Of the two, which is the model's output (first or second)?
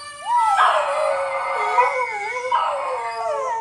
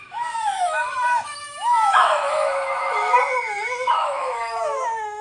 second